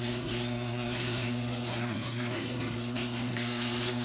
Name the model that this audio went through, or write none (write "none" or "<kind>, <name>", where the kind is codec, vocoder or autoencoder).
codec, SNAC